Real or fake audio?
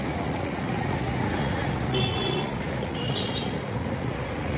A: fake